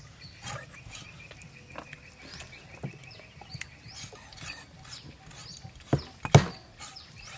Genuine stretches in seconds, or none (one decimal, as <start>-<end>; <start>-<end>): 0.0-7.4